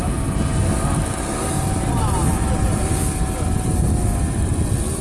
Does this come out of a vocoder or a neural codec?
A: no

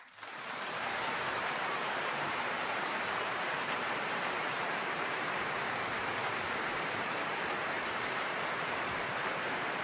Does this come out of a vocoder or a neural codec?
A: yes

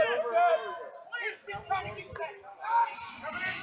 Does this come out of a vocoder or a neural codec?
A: no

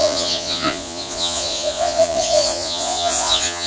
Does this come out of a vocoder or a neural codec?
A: yes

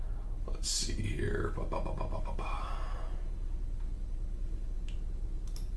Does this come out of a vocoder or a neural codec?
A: no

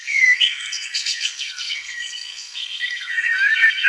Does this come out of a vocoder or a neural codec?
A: yes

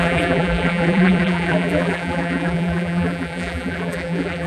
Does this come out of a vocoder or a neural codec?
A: yes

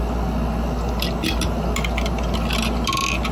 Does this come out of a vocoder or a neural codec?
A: no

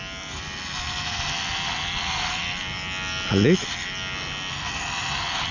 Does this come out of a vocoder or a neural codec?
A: no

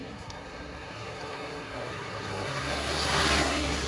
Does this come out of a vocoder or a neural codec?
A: yes